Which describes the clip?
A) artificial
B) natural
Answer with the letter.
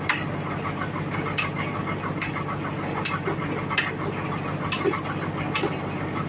B